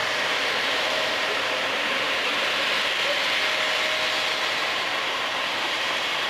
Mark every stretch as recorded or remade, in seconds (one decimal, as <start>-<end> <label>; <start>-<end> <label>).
0.0-2.3 remade; 2.3-4.4 recorded; 4.4-6.3 remade